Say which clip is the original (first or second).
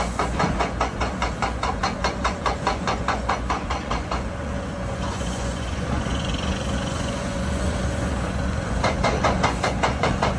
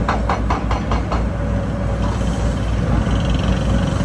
second